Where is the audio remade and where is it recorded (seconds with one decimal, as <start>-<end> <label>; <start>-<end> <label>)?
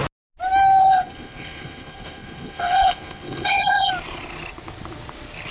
0.0-0.8 recorded; 0.8-3.9 remade; 3.9-5.5 recorded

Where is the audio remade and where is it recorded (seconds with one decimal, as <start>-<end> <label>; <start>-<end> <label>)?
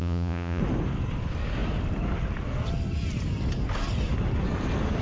0.0-0.6 remade; 0.6-5.0 recorded